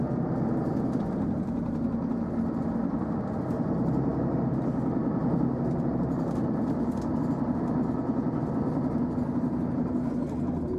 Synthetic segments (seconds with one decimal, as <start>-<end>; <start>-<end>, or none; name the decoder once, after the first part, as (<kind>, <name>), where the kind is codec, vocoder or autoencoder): none